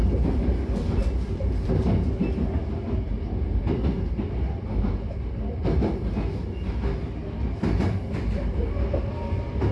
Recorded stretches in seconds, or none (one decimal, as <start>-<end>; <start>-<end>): 0.0-9.7